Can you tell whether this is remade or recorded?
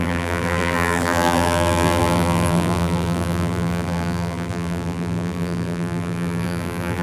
remade